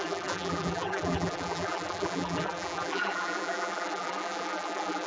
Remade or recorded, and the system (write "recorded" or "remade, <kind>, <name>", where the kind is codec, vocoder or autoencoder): remade, vocoder, BigVGAN v2